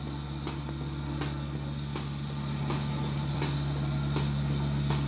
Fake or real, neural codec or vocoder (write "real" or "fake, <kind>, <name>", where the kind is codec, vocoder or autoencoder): real